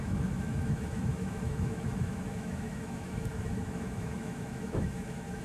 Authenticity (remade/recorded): remade